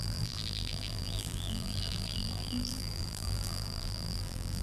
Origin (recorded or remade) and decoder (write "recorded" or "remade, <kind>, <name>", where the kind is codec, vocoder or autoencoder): remade, vocoder, BigVGAN v2